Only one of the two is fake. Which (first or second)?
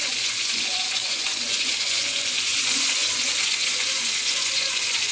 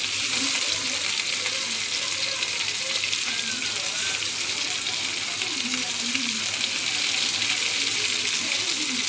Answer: first